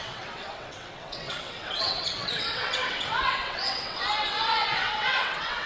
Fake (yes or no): yes